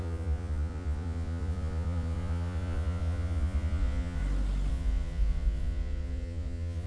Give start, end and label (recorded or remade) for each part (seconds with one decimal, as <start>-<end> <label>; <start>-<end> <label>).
0.0-4.2 remade; 4.2-4.7 recorded; 4.7-6.9 remade